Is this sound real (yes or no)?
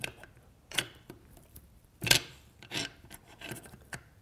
no